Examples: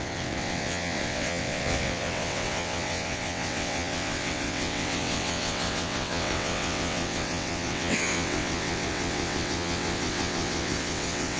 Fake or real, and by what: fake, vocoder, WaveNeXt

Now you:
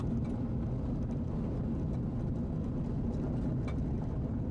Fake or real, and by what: real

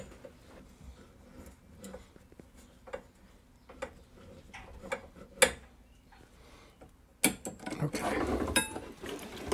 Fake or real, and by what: real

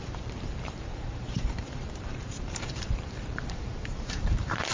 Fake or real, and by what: fake, vocoder, BigVGAN v2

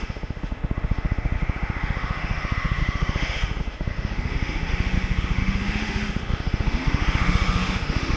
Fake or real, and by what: fake, autoencoder, DAC-VAE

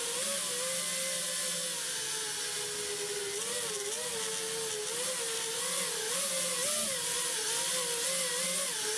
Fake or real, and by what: real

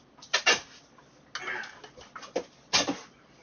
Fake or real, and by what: real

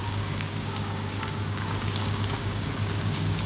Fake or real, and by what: fake, codec, DAC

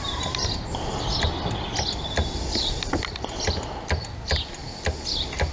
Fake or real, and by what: real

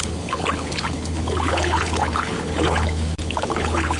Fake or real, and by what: fake, codec, HILCodec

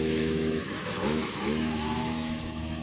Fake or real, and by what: fake, autoencoder, DAC-VAE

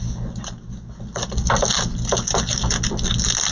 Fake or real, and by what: real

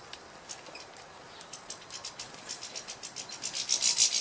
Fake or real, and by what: real